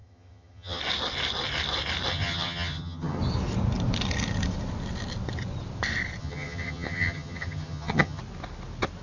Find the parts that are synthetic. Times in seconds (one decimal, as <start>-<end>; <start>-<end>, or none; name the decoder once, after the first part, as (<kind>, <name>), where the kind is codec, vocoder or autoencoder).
0.0-0.8 (vocoder, HiFi-GAN); 2.1-3.2; 6.2-8.2